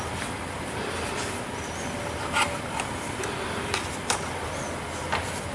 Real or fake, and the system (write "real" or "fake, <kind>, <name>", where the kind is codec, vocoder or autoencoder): real